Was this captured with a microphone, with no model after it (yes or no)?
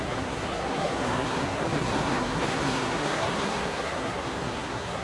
no